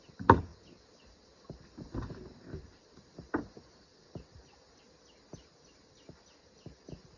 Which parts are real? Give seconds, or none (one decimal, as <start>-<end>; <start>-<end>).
0.0-0.5; 4.8-7.2